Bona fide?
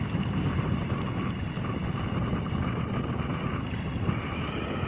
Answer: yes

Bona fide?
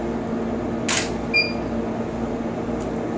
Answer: yes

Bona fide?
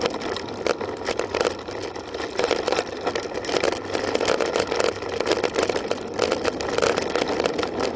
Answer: yes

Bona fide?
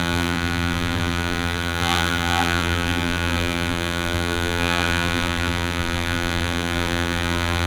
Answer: no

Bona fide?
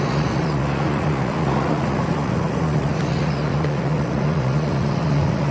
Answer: no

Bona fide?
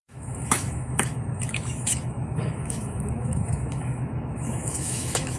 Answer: no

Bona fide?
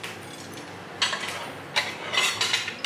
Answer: yes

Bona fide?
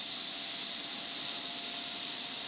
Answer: yes